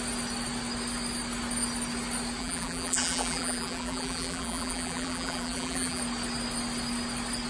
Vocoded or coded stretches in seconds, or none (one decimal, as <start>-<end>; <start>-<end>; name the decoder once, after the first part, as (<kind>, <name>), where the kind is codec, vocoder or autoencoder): 2.4-6.0 (vocoder, BigVGAN v2)